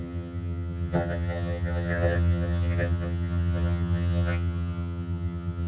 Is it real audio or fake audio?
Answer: fake